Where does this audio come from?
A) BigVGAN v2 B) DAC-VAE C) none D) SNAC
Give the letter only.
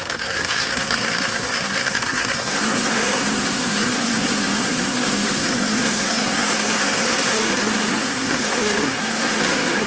D